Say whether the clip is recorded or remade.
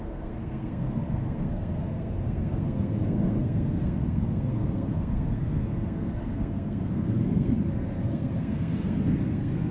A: remade